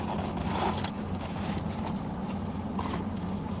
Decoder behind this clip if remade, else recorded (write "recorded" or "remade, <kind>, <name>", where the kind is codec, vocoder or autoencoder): recorded